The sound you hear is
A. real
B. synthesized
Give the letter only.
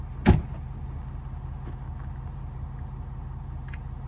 A